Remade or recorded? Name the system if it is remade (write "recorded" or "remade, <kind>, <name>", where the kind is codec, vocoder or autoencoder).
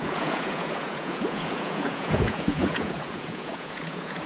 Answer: remade, vocoder, Vocos